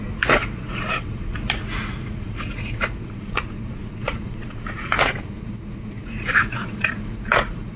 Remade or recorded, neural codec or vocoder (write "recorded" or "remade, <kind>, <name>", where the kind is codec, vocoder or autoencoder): remade, vocoder, Vocos